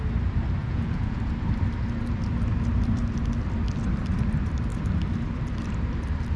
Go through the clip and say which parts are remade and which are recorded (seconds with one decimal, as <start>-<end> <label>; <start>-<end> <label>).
0.0-0.6 recorded; 0.6-1.2 remade; 1.2-6.4 recorded